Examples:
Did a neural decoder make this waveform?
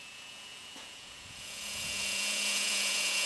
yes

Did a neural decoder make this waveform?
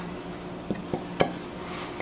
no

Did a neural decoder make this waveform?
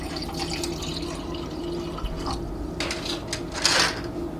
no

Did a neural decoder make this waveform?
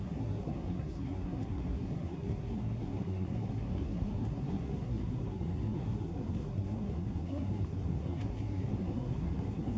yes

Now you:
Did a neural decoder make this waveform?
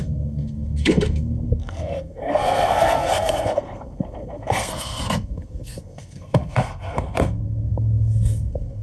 yes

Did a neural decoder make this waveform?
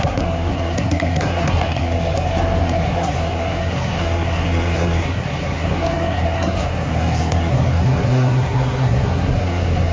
yes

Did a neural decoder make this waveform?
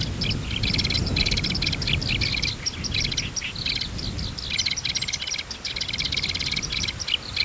no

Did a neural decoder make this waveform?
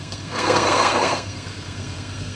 yes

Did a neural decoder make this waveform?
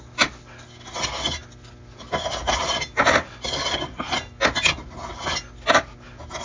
no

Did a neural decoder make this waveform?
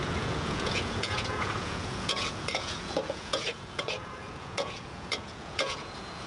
yes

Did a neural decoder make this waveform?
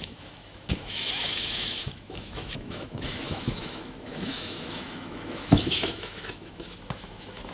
yes